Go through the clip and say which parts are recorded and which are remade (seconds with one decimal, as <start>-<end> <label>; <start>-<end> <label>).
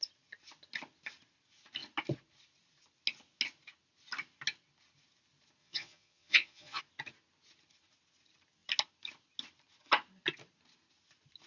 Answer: 0.0-5.6 recorded; 5.6-6.8 remade; 6.8-11.5 recorded